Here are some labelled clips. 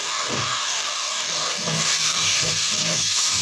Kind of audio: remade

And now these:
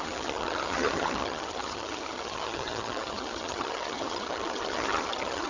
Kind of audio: remade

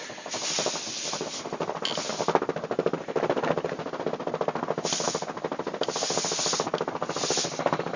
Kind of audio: recorded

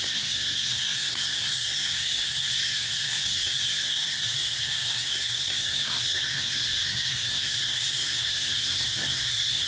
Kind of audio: remade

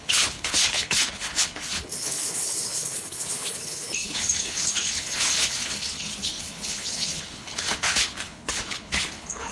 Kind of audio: remade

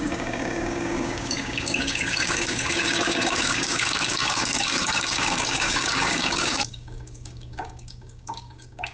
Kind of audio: remade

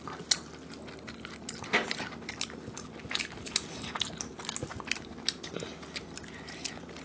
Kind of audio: recorded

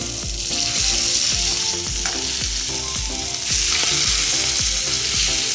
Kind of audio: recorded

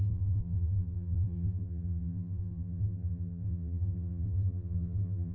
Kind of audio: remade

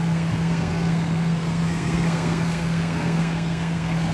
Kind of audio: remade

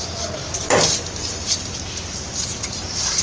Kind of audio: recorded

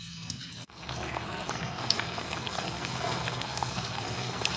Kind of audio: remade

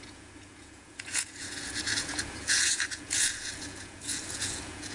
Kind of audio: remade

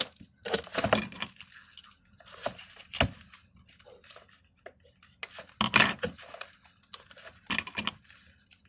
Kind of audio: recorded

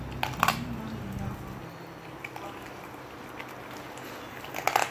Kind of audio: recorded